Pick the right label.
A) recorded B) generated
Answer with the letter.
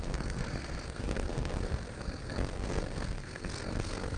B